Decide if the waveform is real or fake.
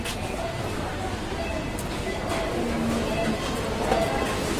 real